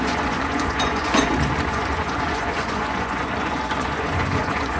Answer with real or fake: fake